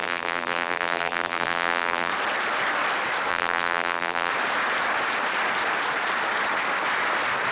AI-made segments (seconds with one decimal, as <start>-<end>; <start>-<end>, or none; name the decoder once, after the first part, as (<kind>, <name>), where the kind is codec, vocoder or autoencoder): 0.0-2.1 (vocoder, BigVGAN v2); 3.3-4.3